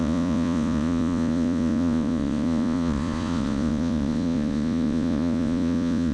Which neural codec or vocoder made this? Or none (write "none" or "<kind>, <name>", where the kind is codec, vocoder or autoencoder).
vocoder, Vocos